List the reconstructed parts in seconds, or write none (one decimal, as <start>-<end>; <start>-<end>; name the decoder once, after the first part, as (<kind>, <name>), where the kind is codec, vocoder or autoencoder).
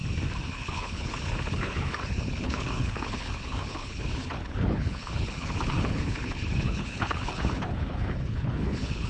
0.5-9.1 (codec, HILCodec)